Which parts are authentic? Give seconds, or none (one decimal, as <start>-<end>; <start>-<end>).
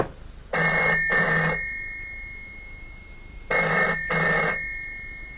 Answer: 0.0-5.4